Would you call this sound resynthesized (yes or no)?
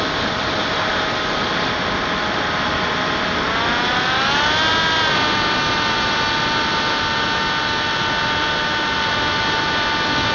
no